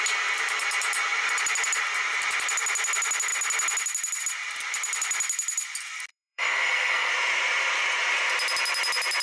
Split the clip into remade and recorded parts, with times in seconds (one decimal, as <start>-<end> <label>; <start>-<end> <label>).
0.0-6.1 recorded; 6.1-7.1 remade; 7.1-9.2 recorded